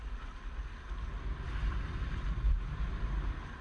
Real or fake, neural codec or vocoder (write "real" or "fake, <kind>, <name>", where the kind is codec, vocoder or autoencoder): real